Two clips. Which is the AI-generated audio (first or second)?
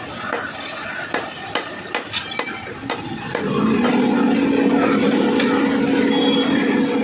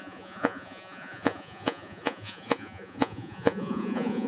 second